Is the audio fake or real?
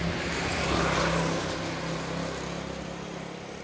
real